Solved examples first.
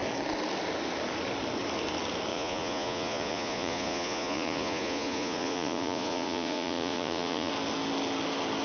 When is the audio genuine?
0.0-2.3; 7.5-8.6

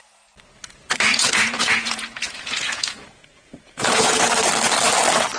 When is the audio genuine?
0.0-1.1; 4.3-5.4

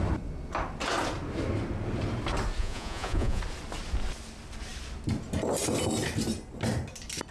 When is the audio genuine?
0.0-2.6; 3.4-7.3